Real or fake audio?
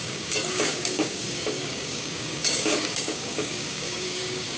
fake